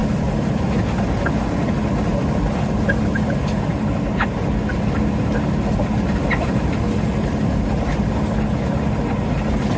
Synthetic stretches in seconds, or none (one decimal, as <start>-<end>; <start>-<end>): none